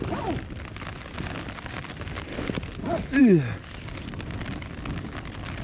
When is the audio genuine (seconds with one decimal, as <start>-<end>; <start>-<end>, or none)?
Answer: 0.0-5.6

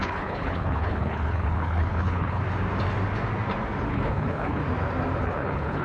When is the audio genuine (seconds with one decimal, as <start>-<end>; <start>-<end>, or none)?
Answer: 2.4-3.9; 4.6-5.2

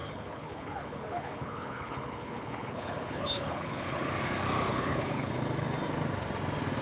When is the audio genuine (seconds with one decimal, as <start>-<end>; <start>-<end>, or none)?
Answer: 4.1-4.7; 5.3-6.8

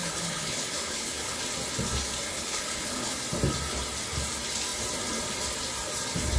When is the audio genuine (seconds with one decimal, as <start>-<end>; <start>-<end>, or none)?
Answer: 1.4-2.3; 3.2-6.4